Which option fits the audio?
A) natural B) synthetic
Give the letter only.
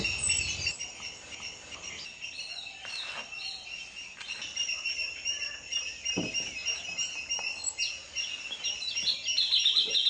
A